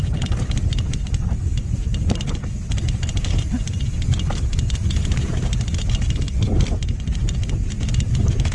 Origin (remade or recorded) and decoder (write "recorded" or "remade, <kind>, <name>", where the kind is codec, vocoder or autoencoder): recorded